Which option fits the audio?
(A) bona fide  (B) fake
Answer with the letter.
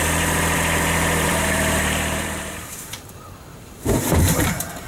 B